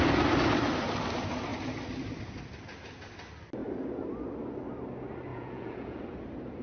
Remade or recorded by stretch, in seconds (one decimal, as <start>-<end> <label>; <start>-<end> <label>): 0.0-5.3 recorded; 5.3-6.0 remade; 6.0-6.6 recorded